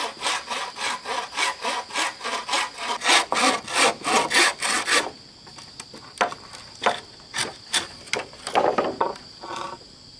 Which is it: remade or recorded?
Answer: recorded